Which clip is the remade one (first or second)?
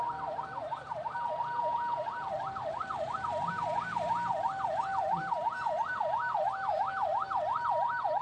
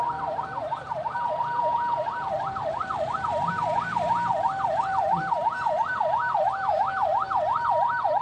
second